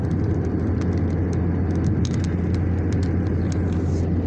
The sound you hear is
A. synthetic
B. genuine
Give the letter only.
B